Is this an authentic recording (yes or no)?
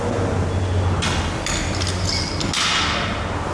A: yes